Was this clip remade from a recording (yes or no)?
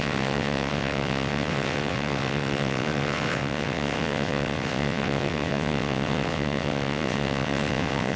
yes